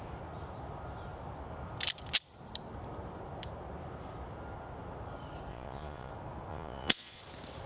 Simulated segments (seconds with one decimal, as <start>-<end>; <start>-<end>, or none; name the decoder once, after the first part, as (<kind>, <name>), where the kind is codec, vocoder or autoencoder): 5.5-6.1 (vocoder, Vocos); 6.5-7.2